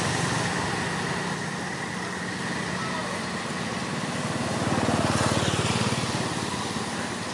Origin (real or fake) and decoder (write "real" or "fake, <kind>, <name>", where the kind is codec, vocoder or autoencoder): real